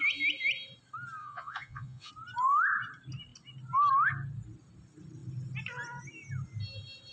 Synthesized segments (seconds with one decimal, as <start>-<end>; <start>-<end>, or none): 1.2-2.1